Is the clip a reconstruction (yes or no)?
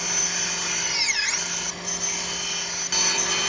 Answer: no